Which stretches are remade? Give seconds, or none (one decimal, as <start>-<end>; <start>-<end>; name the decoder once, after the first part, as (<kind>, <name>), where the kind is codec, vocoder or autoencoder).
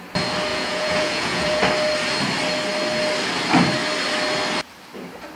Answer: 0.5-1.6 (vocoder, Vocos)